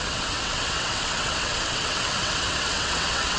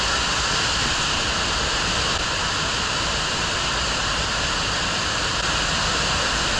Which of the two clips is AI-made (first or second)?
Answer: first